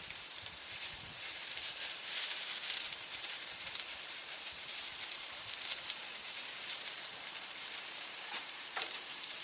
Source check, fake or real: fake